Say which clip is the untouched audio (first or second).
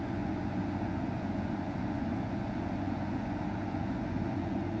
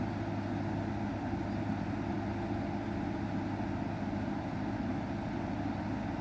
second